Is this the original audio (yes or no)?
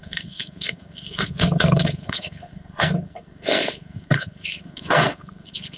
no